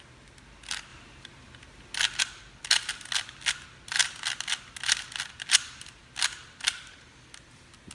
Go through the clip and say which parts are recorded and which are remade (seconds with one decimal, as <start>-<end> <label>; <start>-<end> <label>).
0.0-7.9 recorded